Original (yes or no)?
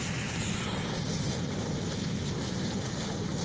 yes